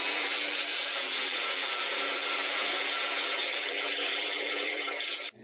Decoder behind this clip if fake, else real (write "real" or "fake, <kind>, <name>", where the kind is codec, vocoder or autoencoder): fake, vocoder, BigVGAN v2